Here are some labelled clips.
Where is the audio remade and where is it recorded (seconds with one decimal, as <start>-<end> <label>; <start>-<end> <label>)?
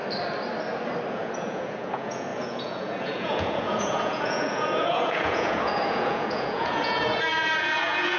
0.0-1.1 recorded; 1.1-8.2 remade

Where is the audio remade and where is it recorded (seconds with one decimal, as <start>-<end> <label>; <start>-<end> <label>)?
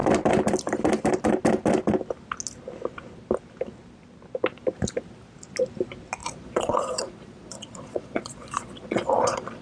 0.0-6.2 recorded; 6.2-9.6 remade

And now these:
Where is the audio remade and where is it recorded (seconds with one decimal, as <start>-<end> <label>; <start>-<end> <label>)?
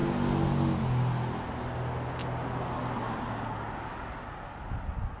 0.0-5.2 recorded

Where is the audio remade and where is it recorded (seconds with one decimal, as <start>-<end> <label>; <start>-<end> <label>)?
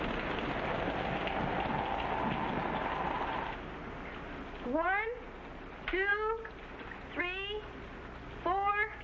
0.0-9.0 recorded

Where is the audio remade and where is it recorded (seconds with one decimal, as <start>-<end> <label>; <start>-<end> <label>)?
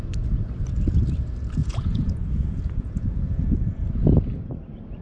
0.0-1.6 recorded; 1.6-3.9 remade; 3.9-5.0 recorded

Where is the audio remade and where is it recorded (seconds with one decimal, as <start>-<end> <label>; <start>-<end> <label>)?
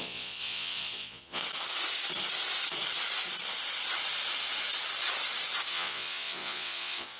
0.0-1.4 remade; 1.4-5.7 recorded; 5.7-7.2 remade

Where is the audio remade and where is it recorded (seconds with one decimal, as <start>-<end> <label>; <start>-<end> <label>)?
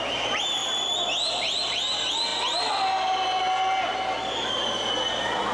0.0-5.5 recorded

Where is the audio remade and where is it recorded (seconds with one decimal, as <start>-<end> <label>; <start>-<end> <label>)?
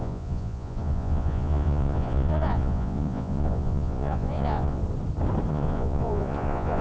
0.0-4.8 remade; 4.8-5.5 recorded; 5.5-6.8 remade